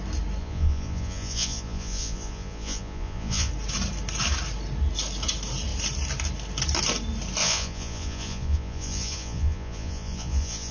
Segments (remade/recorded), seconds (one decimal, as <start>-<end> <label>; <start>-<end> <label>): 0.0-0.4 recorded; 0.4-3.5 remade; 3.5-7.4 recorded; 7.4-10.7 remade